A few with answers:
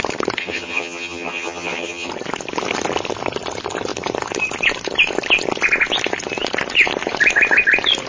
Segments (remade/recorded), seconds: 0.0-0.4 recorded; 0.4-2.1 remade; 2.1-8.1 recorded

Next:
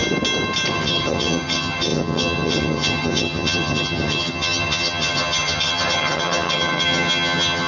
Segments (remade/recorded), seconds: 0.0-0.7 recorded; 0.7-7.7 remade

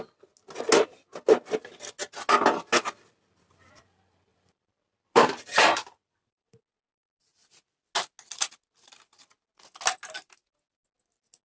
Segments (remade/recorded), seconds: 0.0-4.3 recorded; 4.3-6.6 remade; 6.6-11.4 recorded

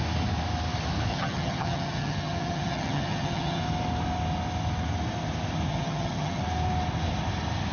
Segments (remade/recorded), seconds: 0.0-1.1 recorded; 1.1-3.6 remade; 3.6-5.7 recorded; 5.7-6.4 remade; 6.4-7.7 recorded

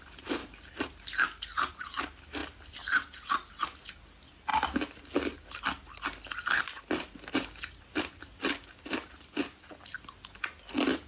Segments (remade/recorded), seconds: 0.0-11.1 recorded

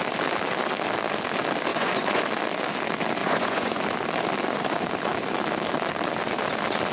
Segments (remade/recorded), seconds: 0.0-1.7 recorded; 1.7-2.2 remade; 2.2-3.2 recorded; 3.2-3.8 remade; 3.8-6.9 recorded

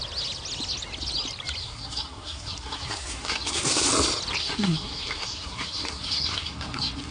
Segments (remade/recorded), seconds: 0.0-1.6 recorded; 1.6-3.9 remade; 3.9-4.4 recorded; 4.4-7.1 remade